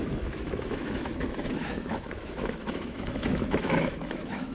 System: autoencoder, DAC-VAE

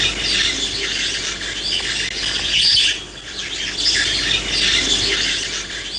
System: none